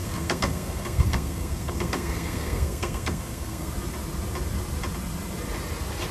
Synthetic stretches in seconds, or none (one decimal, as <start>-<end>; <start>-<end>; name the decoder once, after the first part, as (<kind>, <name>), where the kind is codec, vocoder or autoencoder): 0.0-3.7 (codec, SNAC)